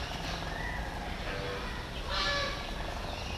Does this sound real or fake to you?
real